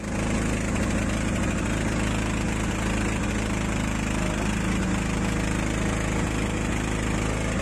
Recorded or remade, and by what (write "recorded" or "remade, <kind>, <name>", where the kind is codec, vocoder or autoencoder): recorded